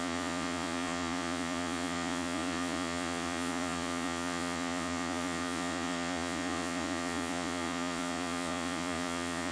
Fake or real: fake